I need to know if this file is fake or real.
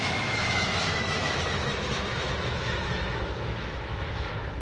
fake